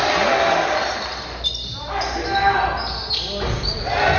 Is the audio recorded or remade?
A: recorded